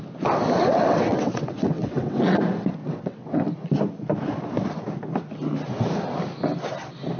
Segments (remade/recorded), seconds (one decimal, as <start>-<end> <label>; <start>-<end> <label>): 0.0-0.6 recorded; 0.6-2.4 remade; 2.4-2.8 recorded; 2.8-3.4 remade; 3.4-7.2 recorded